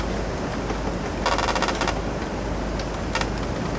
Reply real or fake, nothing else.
real